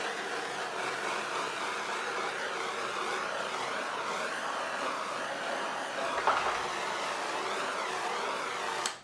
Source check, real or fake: fake